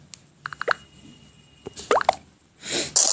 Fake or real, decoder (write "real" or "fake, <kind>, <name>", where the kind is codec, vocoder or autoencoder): real